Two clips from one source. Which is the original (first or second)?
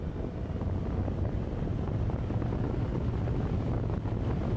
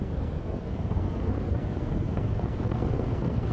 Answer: first